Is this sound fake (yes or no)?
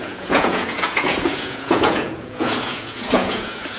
yes